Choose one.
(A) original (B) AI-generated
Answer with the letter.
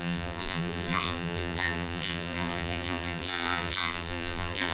B